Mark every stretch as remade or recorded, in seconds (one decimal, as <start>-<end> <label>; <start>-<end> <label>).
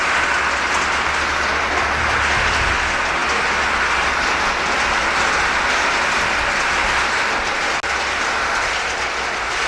0.0-9.7 recorded